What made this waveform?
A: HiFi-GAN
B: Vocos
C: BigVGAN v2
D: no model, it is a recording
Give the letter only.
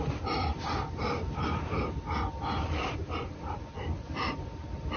D